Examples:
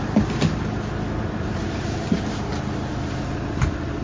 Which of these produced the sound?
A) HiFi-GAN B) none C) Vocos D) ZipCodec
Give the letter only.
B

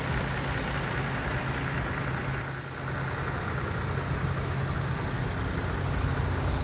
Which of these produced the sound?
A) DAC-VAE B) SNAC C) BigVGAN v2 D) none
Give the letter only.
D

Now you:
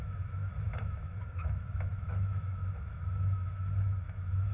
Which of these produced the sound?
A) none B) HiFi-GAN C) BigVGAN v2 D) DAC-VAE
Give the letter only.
D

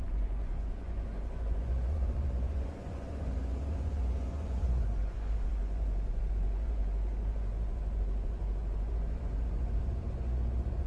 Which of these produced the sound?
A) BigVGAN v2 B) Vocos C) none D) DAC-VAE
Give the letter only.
B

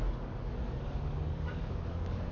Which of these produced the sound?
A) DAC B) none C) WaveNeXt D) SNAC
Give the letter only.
A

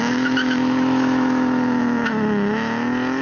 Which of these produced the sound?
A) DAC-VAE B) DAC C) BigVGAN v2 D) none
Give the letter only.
A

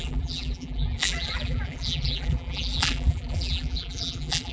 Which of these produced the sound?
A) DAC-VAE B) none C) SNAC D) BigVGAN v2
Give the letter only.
D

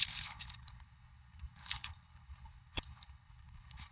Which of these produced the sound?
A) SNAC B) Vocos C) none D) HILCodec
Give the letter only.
D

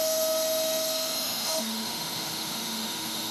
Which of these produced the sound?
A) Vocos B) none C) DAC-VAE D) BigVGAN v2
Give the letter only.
C